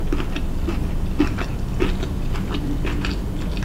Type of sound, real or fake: real